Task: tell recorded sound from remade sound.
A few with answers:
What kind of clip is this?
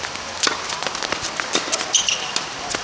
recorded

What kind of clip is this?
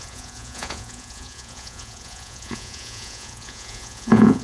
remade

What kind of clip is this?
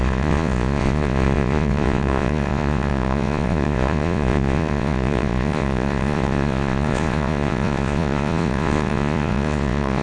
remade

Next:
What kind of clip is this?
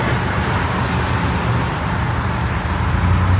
recorded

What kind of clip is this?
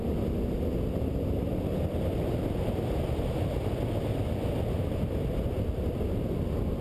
recorded